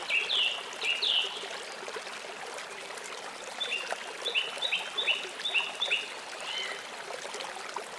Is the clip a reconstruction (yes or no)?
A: no